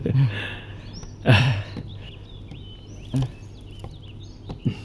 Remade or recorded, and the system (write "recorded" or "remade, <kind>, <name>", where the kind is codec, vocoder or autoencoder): recorded